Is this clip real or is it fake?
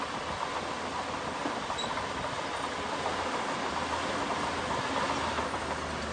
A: real